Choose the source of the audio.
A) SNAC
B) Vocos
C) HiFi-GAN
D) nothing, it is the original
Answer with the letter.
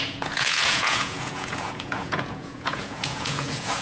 B